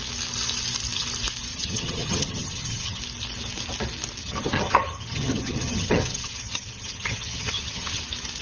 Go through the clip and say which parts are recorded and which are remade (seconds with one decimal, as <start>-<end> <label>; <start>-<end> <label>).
0.0-1.5 recorded; 1.5-3.0 remade; 3.0-4.2 recorded; 4.2-8.0 remade; 8.0-8.4 recorded